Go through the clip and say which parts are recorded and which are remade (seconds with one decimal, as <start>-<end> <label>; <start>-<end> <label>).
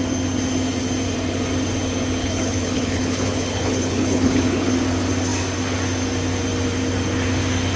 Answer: 0.0-2.2 recorded; 2.2-4.7 remade; 4.7-7.8 recorded